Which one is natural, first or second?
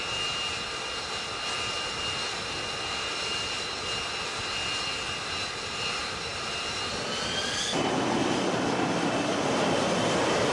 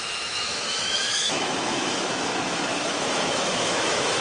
first